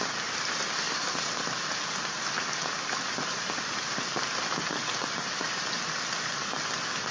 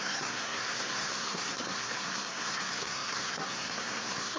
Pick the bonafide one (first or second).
first